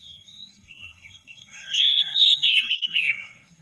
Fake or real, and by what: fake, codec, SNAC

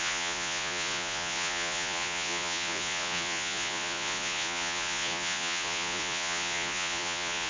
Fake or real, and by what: fake, vocoder, Vocos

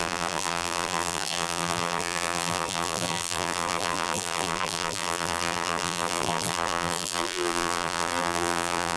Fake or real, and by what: fake, vocoder, BigVGAN v2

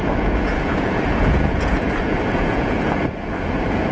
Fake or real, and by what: fake, vocoder, Vocos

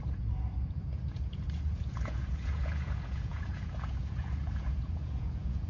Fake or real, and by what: fake, vocoder, Vocos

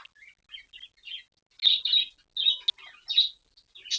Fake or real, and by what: real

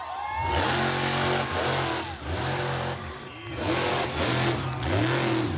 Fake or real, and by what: real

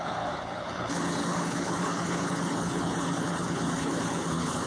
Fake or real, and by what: fake, codec, HILCodec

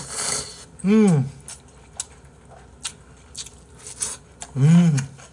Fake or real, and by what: real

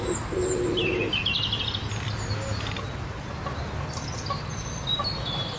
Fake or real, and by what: real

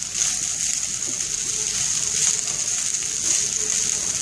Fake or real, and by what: real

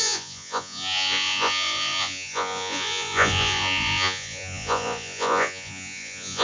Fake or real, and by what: fake, vocoder, Vocos